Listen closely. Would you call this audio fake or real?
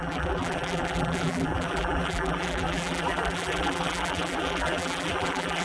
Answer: fake